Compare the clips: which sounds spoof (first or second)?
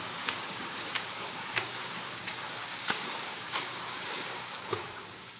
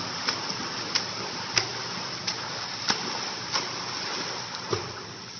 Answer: first